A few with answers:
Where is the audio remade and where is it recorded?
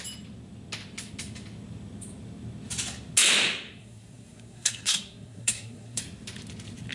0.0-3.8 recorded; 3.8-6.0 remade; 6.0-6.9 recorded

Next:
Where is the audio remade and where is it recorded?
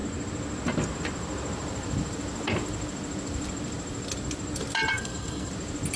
0.0-4.9 recorded; 4.9-5.5 remade; 5.5-6.0 recorded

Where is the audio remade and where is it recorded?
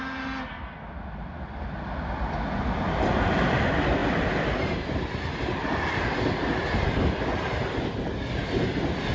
0.0-9.1 recorded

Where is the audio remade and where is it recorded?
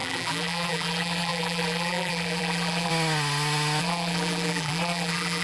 0.0-2.9 remade; 2.9-3.8 recorded; 3.8-5.4 remade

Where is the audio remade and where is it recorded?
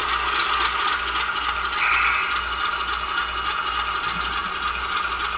0.0-5.4 recorded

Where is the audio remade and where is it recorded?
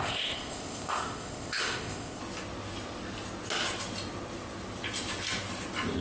0.0-2.2 remade; 2.2-6.0 recorded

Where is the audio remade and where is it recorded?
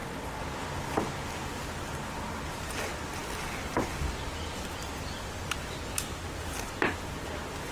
0.0-7.7 recorded